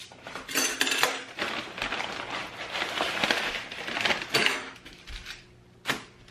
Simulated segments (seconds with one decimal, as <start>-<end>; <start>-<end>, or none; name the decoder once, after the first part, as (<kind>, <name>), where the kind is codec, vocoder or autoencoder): 4.4-5.0 (autoencoder, DAC-VAE)